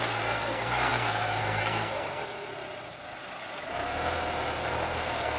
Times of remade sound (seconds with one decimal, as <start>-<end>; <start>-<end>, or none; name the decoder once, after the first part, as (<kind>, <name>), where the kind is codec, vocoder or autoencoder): 0.0-2.2 (codec, SNAC); 4.6-5.4